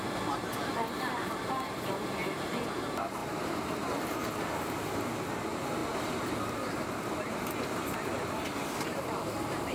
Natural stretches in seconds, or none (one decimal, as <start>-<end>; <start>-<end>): 5.8-6.4; 8.1-8.6